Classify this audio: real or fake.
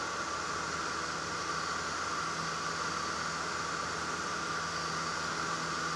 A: real